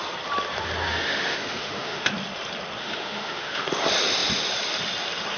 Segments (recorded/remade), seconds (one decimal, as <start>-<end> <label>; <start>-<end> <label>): 0.0-0.9 recorded; 0.9-2.1 remade; 2.1-2.8 recorded; 2.8-3.8 remade; 3.8-5.4 recorded